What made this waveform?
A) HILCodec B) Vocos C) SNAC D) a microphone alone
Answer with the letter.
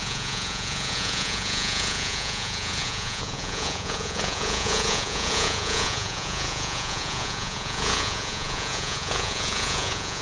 B